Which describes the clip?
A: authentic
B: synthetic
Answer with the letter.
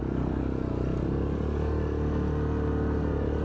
A